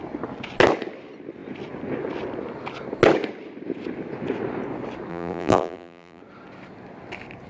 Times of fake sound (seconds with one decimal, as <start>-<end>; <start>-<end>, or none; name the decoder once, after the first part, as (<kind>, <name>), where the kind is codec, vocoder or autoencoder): 5.1-6.2 (vocoder, BigVGAN v2)

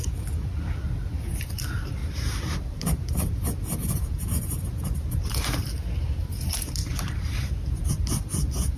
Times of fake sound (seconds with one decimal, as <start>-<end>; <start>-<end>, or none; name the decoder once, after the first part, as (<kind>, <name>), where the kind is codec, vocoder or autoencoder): 2.0-5.3 (vocoder, BigVGAN v2); 6.8-7.9

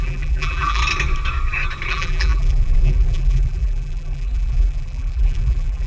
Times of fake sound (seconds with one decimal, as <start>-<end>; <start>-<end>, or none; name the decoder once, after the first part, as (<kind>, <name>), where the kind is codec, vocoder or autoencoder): 0.0-0.8 (vocoder, BigVGAN v2); 1.9-5.9

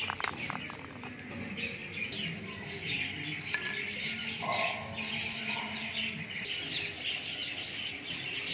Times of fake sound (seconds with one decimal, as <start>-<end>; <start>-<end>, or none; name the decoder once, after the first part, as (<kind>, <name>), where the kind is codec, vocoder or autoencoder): none

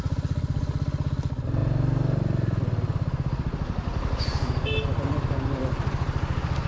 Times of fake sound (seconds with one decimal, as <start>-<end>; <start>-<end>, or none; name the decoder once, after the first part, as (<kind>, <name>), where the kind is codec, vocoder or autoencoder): none